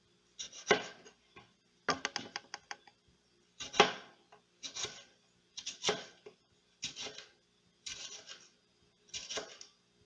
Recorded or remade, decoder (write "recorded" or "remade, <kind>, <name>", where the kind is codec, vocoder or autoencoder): recorded